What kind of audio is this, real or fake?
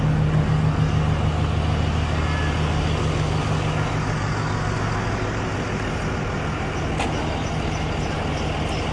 real